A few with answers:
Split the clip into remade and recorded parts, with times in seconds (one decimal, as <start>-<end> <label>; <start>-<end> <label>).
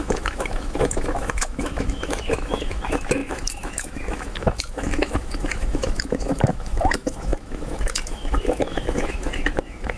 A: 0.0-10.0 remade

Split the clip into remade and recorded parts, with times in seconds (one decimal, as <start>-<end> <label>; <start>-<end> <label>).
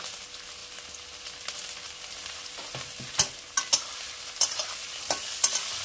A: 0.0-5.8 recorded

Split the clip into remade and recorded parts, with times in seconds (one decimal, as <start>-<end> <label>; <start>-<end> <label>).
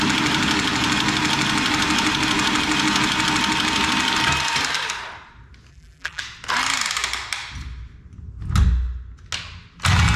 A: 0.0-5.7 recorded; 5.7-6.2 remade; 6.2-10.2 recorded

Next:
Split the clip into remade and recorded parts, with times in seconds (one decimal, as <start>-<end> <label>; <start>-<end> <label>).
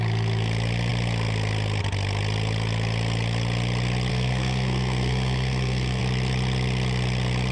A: 0.0-4.1 recorded; 4.1-6.0 remade; 6.0-7.5 recorded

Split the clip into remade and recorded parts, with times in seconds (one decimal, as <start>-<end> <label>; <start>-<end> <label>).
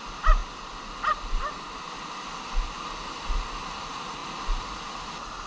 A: 0.0-5.5 recorded